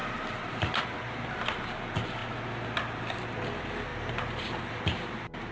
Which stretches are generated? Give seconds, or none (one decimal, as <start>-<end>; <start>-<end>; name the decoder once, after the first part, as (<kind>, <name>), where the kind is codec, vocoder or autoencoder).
0.0-0.8 (vocoder, BigVGAN v2); 3.9-5.5